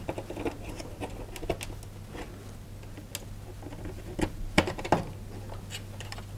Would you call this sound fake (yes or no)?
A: no